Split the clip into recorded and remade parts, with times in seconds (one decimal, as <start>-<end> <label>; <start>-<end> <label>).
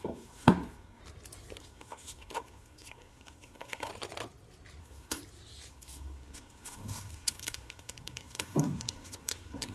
0.0-1.0 remade; 1.0-1.6 recorded; 1.6-3.9 remade; 3.9-4.8 recorded; 4.8-5.2 remade; 5.2-5.7 recorded; 5.7-9.7 remade